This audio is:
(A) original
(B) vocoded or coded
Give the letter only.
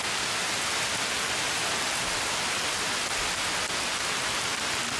A